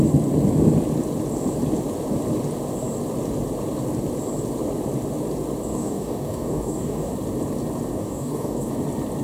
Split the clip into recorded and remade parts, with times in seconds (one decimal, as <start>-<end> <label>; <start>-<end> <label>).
0.0-5.7 recorded; 5.7-7.1 remade; 7.1-7.9 recorded; 7.9-8.7 remade; 8.7-9.2 recorded